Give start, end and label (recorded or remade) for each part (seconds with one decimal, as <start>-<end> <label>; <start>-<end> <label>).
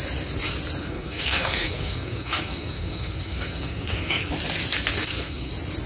0.0-0.8 recorded; 0.8-4.3 remade; 4.3-5.0 recorded; 5.0-5.5 remade; 5.5-5.9 recorded